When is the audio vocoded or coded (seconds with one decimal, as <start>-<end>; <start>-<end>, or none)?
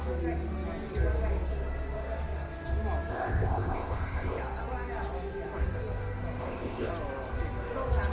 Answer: 3.1-4.4; 6.4-6.9